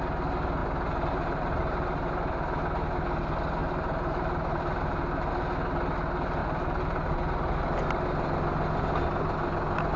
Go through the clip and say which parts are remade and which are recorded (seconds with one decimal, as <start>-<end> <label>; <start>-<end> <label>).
0.0-0.6 recorded; 0.6-2.6 remade; 2.6-3.6 recorded; 3.6-5.3 remade; 5.3-6.4 recorded; 6.4-7.1 remade; 7.1-10.0 recorded

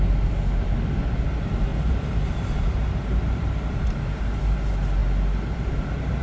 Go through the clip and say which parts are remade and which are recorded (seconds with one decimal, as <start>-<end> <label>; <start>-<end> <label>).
0.0-1.7 recorded; 1.7-4.4 remade; 4.4-6.2 recorded